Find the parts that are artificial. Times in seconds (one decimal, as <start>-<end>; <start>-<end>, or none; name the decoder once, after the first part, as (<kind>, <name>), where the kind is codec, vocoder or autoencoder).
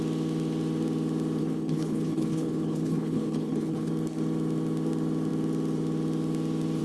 1.4-3.9 (codec, HILCodec)